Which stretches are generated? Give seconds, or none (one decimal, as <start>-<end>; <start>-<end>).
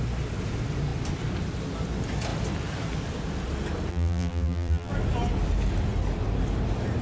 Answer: 3.9-4.9